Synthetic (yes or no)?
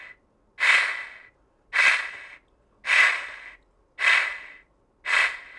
no